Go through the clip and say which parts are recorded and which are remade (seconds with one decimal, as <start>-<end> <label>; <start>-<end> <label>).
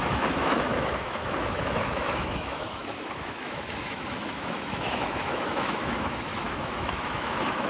0.0-7.7 remade